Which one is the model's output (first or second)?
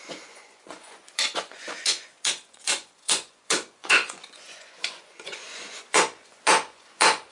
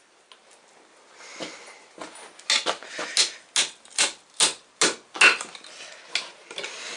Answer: first